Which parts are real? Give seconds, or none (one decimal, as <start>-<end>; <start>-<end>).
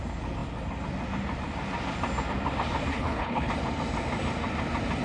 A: 0.0-2.9; 3.5-5.0